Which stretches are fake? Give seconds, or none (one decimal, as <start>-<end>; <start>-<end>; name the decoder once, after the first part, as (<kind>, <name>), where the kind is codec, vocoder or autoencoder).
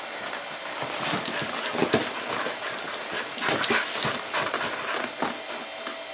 0.0-1.8 (vocoder, BigVGAN v2); 5.5-6.1